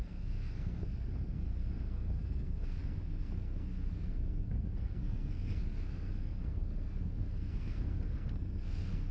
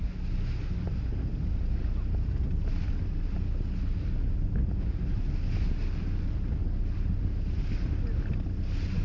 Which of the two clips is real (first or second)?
second